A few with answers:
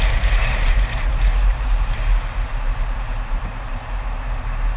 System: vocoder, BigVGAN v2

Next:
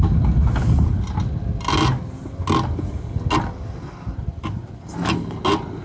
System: none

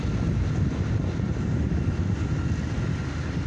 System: none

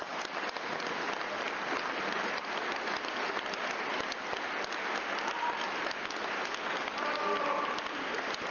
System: none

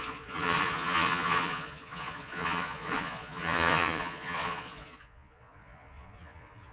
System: vocoder, Vocos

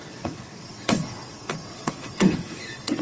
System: vocoder, WaveNeXt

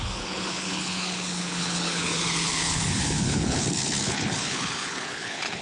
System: codec, HILCodec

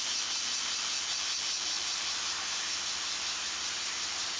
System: none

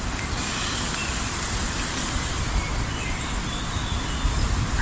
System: none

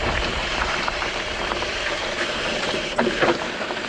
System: vocoder, BigVGAN v2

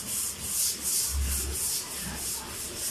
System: none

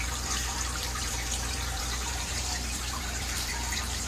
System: vocoder, BigVGAN v2